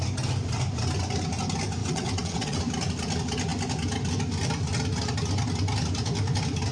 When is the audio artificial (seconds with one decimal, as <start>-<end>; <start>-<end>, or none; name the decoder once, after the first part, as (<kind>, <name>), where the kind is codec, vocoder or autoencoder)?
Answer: 1.8-2.6 (vocoder, WaveNeXt)